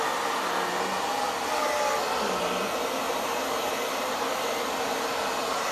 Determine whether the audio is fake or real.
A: real